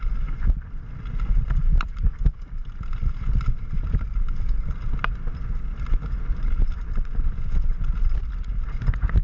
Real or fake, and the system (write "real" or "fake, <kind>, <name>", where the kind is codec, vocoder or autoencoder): real